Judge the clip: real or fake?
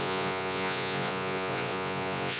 fake